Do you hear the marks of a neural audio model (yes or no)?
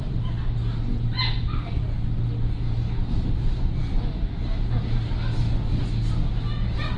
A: no